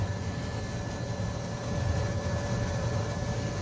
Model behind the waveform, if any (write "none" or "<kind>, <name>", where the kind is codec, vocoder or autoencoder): none